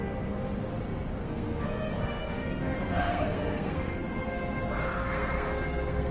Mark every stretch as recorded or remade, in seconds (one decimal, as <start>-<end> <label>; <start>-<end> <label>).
0.0-1.2 recorded; 1.2-4.4 remade; 4.4-5.0 recorded; 5.0-6.1 remade